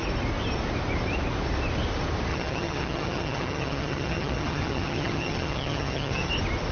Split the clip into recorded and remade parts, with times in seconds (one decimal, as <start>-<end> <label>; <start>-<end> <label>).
0.0-2.3 recorded; 2.3-6.3 remade; 6.3-6.7 recorded